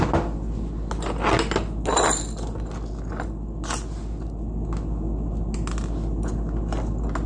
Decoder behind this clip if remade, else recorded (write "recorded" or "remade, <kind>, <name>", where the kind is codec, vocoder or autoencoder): recorded